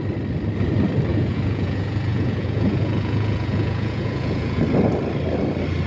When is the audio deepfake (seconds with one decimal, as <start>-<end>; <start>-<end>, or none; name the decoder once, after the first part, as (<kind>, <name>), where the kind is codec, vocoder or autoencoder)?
1.1-4.6 (vocoder, Vocos)